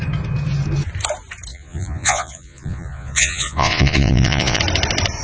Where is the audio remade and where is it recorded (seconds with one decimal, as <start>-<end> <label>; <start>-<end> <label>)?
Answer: 0.0-1.5 recorded; 1.5-4.6 remade; 4.6-5.2 recorded